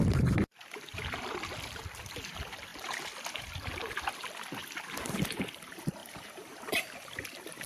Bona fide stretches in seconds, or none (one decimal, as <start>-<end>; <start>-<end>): 0.0-6.0; 6.8-7.7

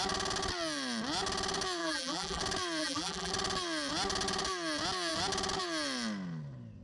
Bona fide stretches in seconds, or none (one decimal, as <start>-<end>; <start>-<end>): 0.0-1.8; 2.4-2.8; 3.3-6.8